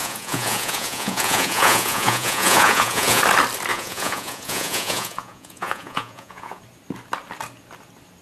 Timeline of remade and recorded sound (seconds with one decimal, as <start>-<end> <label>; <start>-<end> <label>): 0.0-3.2 remade; 3.2-3.7 recorded; 3.7-6.6 remade; 6.6-8.2 recorded